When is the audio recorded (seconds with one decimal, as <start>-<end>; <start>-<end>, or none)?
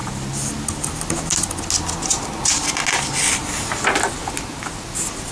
0.0-5.3